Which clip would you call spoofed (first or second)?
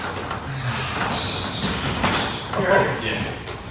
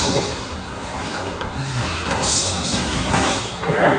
second